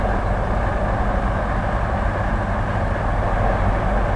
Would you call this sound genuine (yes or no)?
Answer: yes